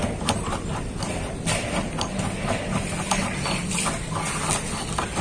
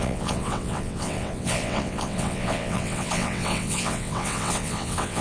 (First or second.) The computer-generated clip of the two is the second